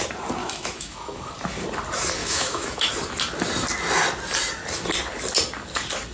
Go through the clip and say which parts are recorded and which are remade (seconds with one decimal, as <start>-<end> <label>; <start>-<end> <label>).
0.0-0.4 recorded; 0.4-1.3 remade; 1.3-2.2 recorded; 2.2-2.9 remade; 2.9-6.1 recorded

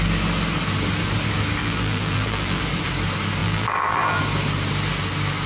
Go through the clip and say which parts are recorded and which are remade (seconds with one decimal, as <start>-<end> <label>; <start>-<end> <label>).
0.0-1.6 recorded; 1.6-2.6 remade; 2.6-3.4 recorded; 3.4-4.2 remade; 4.2-5.5 recorded

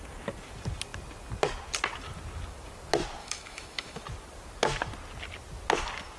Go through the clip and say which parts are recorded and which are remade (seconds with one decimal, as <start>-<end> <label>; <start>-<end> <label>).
0.0-3.2 recorded; 3.2-4.0 remade; 4.0-6.2 recorded

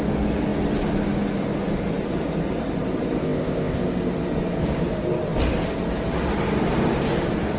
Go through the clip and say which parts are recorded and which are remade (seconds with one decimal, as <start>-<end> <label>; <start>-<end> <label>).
0.0-3.2 recorded; 3.2-3.8 remade; 3.8-7.6 recorded

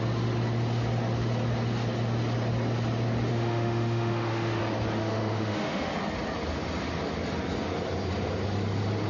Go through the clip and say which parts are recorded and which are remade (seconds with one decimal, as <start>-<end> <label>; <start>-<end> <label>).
0.0-3.3 recorded; 3.3-4.6 remade; 4.6-5.0 recorded; 5.0-5.9 remade; 5.9-9.1 recorded